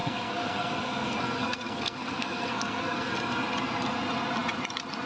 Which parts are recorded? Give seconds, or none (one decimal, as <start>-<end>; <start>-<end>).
3.1-5.1